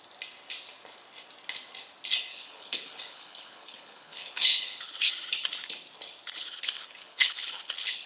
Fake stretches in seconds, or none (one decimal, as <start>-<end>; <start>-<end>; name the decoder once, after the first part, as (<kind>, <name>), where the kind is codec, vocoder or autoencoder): 2.3-5.1 (codec, HILCodec); 6.4-8.1